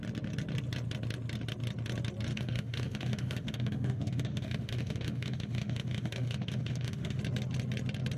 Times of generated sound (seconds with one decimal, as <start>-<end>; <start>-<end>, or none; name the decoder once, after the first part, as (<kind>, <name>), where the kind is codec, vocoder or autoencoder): 2.3-7.2 (autoencoder, DAC-VAE)